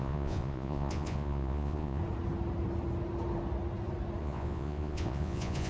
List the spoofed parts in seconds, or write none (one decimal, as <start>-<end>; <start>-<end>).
0.0-2.0; 4.2-5.7

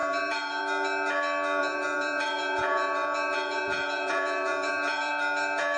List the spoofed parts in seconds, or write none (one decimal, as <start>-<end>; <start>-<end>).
0.0-0.6; 1.6-5.1